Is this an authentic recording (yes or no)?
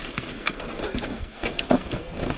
no